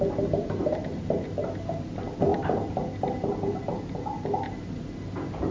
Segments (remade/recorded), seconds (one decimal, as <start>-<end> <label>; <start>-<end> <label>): 0.0-5.5 recorded